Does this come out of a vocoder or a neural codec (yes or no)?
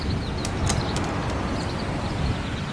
no